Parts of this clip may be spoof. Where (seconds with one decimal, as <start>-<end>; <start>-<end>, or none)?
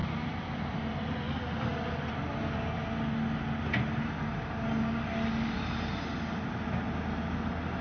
0.0-1.0